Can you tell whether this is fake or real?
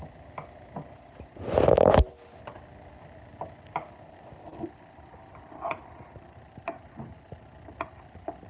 real